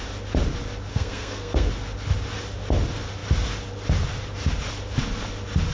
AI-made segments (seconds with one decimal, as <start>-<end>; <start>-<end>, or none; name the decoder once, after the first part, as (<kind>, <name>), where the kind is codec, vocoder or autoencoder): 0.9-1.7 (codec, SNAC)